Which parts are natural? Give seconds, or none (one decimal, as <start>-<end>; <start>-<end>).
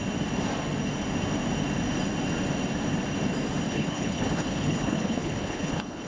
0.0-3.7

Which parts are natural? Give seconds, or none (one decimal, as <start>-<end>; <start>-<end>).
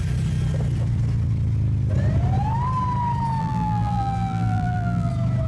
0.0-3.4; 5.1-5.5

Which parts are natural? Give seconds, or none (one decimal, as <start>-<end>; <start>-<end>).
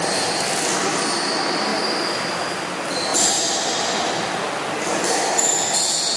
0.0-6.2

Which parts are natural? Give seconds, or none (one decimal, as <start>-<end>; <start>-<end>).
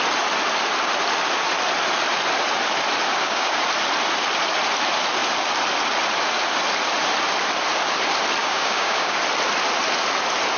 0.0-3.1; 3.6-8.4; 9.2-10.6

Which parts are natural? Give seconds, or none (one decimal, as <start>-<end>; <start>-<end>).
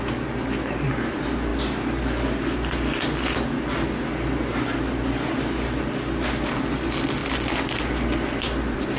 0.0-9.0